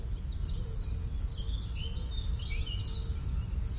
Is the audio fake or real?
real